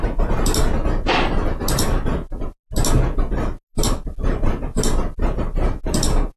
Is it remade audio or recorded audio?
recorded